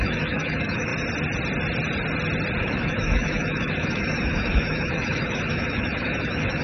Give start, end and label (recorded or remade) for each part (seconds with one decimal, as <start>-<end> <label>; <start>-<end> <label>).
0.0-0.9 remade; 0.9-2.6 recorded; 2.6-6.6 remade